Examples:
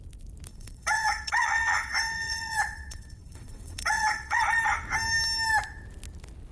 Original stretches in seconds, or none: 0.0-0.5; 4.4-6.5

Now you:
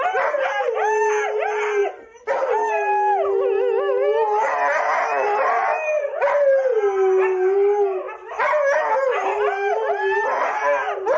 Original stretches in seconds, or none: 0.0-11.2

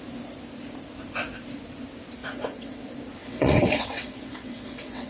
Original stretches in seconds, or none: 0.0-2.2; 2.8-3.2

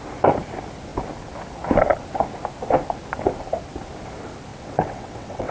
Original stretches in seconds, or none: 0.0-4.5

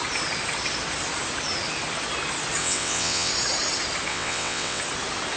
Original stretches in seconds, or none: 0.0-2.6; 3.3-4.1; 4.8-5.4

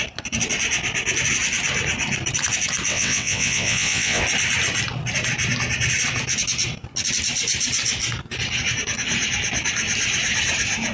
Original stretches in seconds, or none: 0.0-2.9; 4.2-10.9

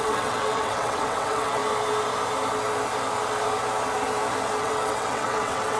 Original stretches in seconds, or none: 1.6-4.6